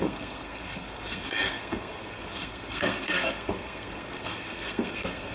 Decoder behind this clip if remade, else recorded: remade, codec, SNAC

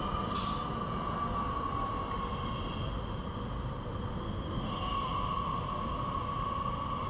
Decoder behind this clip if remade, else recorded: recorded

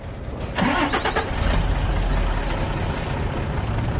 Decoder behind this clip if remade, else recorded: recorded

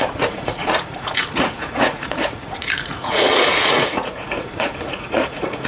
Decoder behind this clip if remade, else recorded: remade, vocoder, Vocos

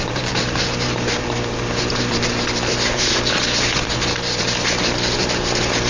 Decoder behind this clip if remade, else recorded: remade, vocoder, BigVGAN v2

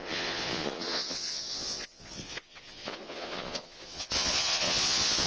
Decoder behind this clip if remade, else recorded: remade, vocoder, Vocos